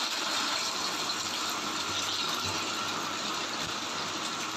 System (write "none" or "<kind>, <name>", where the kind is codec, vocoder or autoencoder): none